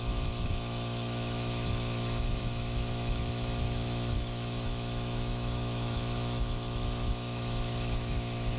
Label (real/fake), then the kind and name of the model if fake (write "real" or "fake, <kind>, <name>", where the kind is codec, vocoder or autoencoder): fake, autoencoder, DAC-VAE